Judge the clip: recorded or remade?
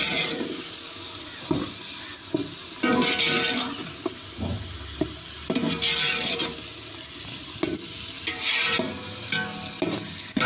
recorded